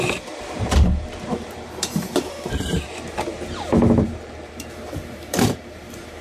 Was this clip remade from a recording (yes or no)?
yes